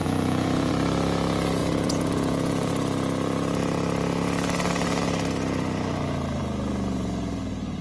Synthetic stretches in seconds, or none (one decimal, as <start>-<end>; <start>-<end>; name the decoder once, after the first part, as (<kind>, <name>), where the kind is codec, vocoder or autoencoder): 0.0-0.7 (vocoder, Vocos); 1.6-2.7